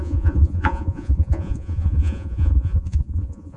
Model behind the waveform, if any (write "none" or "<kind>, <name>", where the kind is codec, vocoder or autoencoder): vocoder, Vocos